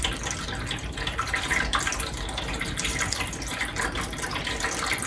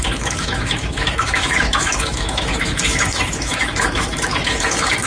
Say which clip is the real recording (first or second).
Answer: first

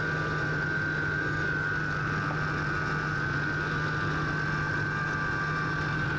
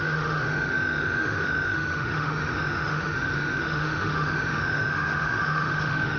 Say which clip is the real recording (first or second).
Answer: first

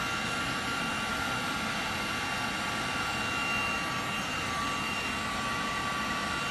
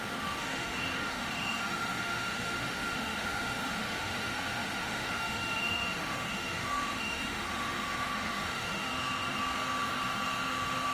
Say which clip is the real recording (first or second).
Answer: first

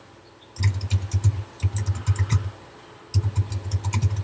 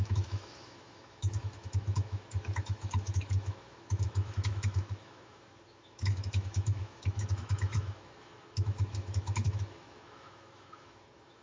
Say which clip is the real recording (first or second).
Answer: first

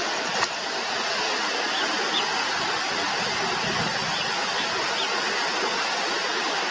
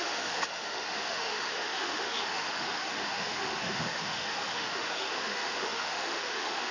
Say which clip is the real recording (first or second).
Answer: first